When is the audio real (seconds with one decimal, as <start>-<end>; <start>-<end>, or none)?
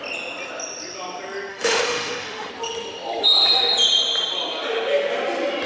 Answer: 0.0-1.5; 2.5-5.7